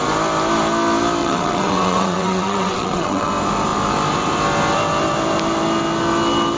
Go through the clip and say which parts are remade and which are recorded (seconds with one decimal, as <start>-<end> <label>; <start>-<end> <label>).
0.0-1.2 recorded; 1.2-3.3 remade; 3.3-6.6 recorded